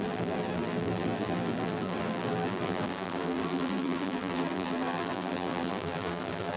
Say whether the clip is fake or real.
fake